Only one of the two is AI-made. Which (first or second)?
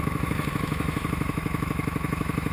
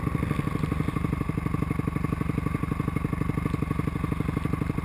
first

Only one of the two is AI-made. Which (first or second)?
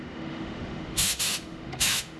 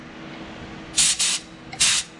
first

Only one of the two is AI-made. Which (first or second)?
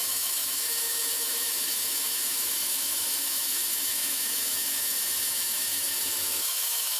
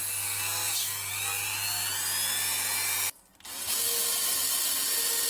first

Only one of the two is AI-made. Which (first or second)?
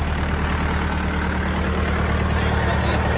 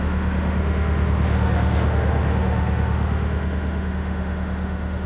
second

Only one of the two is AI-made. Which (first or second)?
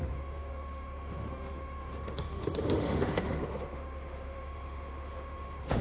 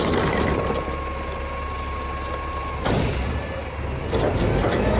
first